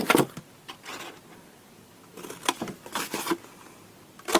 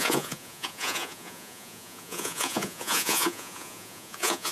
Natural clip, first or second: first